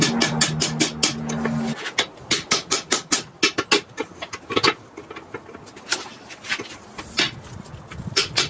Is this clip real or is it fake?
real